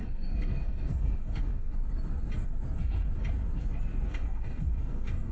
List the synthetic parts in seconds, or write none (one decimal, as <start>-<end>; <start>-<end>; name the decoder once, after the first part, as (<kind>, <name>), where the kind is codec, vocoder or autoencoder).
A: 0.0-1.8 (codec, SNAC); 4.1-5.3